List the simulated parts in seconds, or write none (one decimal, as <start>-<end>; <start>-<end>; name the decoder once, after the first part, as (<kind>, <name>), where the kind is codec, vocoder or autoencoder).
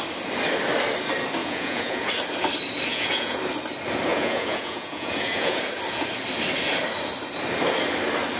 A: 1.4-2.1 (vocoder, Vocos); 2.9-3.4; 4.1-5.6